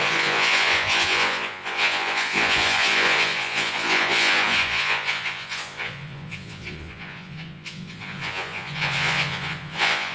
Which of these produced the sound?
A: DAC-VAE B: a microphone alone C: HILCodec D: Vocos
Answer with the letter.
D